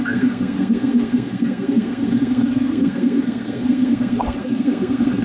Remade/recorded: remade